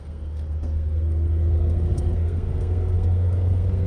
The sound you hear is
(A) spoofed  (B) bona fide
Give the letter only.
A